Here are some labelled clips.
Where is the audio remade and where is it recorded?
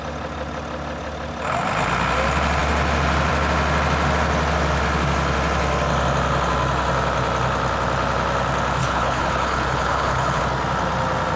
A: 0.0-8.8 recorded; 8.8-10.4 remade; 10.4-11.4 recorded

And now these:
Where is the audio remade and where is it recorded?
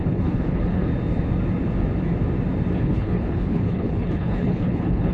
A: 0.0-0.9 remade; 0.9-2.8 recorded; 2.8-5.1 remade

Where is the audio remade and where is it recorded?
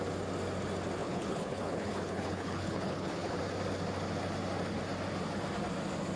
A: 0.0-1.0 recorded; 1.0-3.4 remade; 3.4-6.2 recorded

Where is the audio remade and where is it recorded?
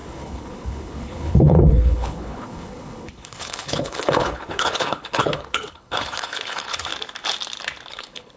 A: 0.0-6.9 remade; 6.9-7.9 recorded; 7.9-8.4 remade